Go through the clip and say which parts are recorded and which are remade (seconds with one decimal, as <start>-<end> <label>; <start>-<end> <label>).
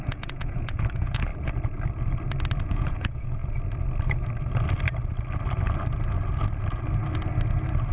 0.0-1.3 remade; 1.3-2.6 recorded; 2.6-3.4 remade; 3.4-7.9 recorded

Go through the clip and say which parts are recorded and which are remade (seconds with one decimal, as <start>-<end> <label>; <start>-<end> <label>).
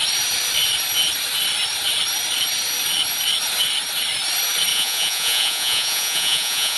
0.0-4.7 recorded; 4.7-6.8 remade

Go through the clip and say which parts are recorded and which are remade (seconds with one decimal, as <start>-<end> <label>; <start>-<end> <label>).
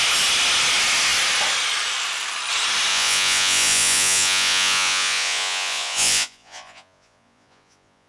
0.0-2.9 recorded; 2.9-8.1 remade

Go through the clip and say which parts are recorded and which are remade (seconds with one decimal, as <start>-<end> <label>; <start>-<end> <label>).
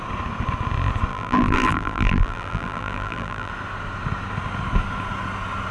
0.0-1.1 recorded; 1.1-3.5 remade; 3.5-5.7 recorded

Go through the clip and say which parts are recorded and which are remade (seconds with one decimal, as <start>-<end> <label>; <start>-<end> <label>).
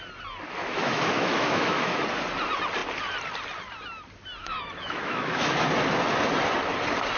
0.0-0.6 recorded; 0.6-2.0 remade; 2.0-4.4 recorded; 4.4-5.5 remade; 5.5-7.2 recorded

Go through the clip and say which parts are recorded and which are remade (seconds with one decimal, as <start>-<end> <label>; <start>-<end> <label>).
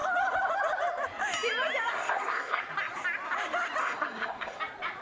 0.0-1.9 recorded; 1.9-2.6 remade; 2.6-3.8 recorded; 3.8-4.6 remade; 4.6-5.0 recorded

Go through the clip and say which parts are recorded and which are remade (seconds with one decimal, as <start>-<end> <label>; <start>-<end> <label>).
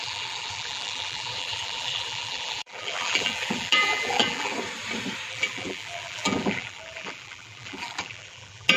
0.0-4.5 remade; 4.5-5.3 recorded; 5.3-8.8 remade